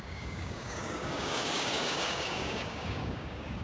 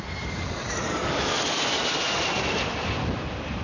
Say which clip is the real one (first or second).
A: second